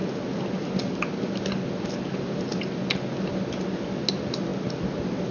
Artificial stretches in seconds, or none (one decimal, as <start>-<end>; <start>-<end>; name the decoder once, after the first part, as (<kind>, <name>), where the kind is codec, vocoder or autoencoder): none